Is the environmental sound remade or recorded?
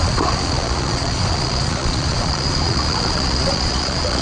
remade